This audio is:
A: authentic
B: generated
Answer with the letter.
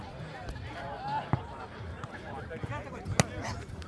A